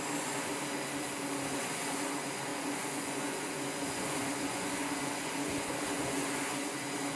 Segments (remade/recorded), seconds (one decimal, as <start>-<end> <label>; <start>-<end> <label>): 0.0-0.5 remade; 0.5-1.6 recorded; 1.6-7.2 remade